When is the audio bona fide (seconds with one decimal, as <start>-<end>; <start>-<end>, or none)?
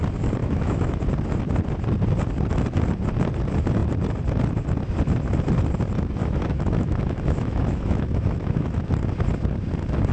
0.0-0.4; 1.0-6.2; 8.9-10.1